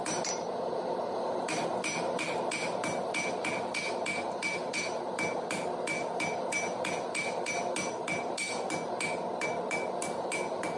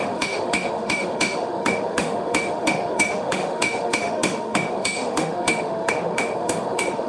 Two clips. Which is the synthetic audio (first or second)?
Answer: second